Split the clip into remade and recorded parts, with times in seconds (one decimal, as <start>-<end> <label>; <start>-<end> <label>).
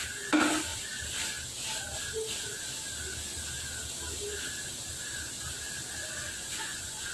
0.0-6.2 recorded; 6.2-7.1 remade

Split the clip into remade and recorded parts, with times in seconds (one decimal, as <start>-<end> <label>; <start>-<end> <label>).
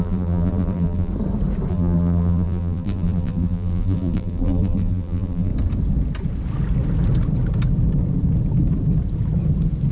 0.0-1.1 remade; 1.1-1.7 recorded; 1.7-5.5 remade; 5.5-9.9 recorded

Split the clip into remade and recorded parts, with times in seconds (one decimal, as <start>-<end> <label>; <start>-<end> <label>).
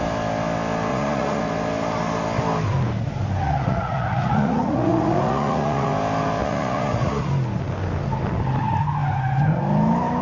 0.0-0.9 recorded; 0.9-1.4 remade; 1.4-3.4 recorded; 3.4-5.9 remade; 5.9-6.4 recorded; 6.4-7.3 remade; 7.3-10.2 recorded